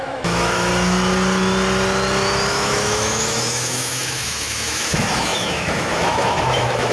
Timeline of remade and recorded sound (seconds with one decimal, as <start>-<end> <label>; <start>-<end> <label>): 0.0-0.7 remade; 0.7-2.5 recorded; 2.5-6.9 remade